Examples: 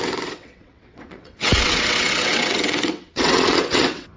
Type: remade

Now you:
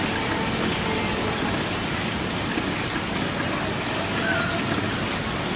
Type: recorded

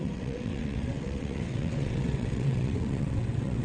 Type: remade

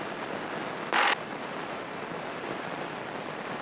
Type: recorded